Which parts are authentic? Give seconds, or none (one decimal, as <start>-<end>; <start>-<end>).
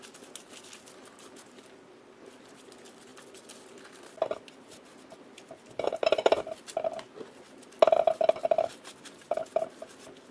0.0-10.3